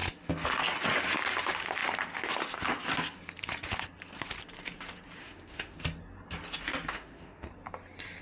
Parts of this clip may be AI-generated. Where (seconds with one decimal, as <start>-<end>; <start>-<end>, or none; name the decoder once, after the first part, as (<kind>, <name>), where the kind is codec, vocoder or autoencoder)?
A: 5.2-5.8 (autoencoder, DAC-VAE); 6.9-7.5